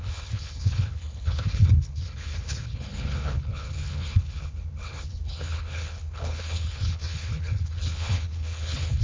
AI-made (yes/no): yes